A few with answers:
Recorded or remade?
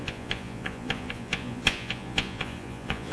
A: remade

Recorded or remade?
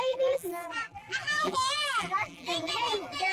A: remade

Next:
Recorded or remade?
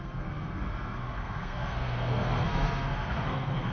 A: remade